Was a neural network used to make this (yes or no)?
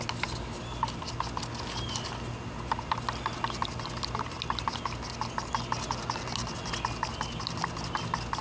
no